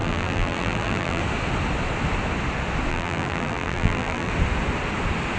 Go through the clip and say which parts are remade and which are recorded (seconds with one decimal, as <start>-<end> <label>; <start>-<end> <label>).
0.0-1.2 remade; 1.2-2.9 recorded; 2.9-4.3 remade; 4.3-5.4 recorded